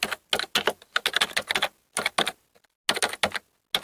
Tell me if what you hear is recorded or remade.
recorded